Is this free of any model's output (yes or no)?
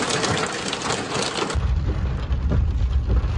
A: yes